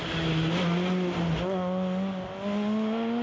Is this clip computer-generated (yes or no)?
no